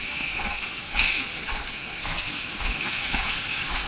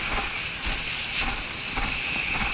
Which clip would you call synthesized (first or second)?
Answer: first